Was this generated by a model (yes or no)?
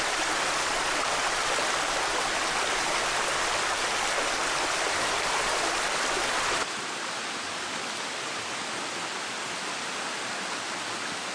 no